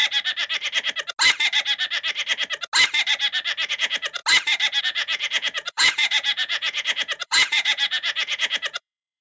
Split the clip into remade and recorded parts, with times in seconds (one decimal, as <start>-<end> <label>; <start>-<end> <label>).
0.0-3.7 recorded; 3.7-4.2 remade; 4.2-4.8 recorded; 4.8-9.2 remade